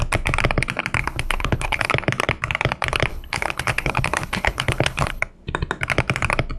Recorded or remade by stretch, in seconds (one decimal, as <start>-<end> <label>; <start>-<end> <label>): 0.0-1.0 recorded; 1.0-1.9 remade; 1.9-3.1 recorded; 3.1-5.2 remade; 5.2-6.6 recorded